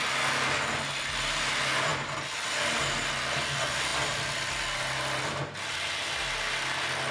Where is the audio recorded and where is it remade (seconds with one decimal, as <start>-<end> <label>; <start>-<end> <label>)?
0.0-7.1 recorded